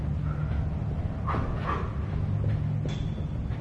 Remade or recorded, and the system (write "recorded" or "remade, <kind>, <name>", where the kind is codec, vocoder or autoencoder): recorded